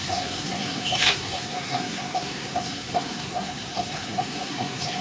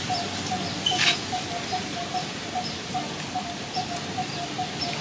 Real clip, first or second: second